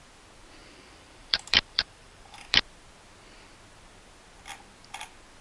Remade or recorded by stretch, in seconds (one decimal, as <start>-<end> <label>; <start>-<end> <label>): 0.0-0.6 recorded; 0.6-2.6 remade; 2.6-5.4 recorded